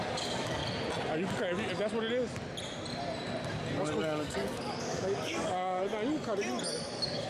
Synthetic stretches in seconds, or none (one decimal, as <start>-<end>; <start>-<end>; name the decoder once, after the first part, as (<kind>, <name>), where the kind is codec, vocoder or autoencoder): 0.0-0.6 (codec, DAC); 4.0-5.8; 6.6-7.3